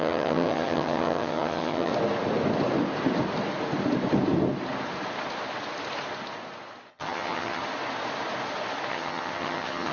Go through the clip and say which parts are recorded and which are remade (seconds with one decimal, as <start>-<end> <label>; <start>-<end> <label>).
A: 0.0-1.9 remade; 1.9-6.9 recorded; 6.9-7.6 remade; 7.6-8.9 recorded; 8.9-9.9 remade